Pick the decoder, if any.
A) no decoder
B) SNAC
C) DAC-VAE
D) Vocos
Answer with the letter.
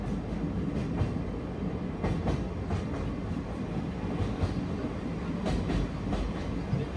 A